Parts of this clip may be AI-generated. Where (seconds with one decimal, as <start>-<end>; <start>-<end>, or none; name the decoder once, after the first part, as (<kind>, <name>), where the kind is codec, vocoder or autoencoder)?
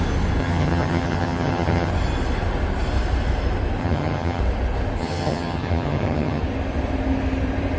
0.4-1.9 (vocoder, HiFi-GAN); 3.8-4.4; 5.0-6.4